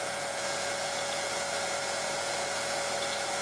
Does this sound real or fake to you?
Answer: fake